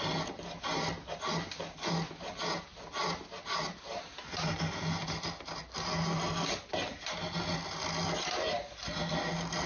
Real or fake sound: real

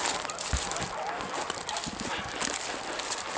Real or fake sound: real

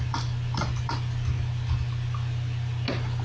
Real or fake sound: real